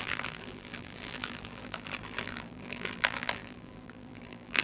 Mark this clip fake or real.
fake